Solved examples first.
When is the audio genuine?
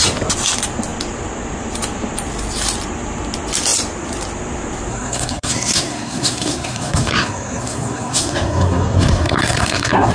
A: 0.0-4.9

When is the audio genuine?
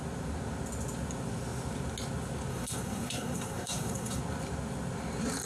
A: 0.0-2.5; 4.2-5.5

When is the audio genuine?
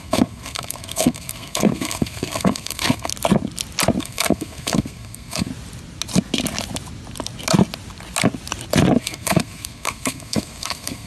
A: 3.1-4.0; 5.5-9.0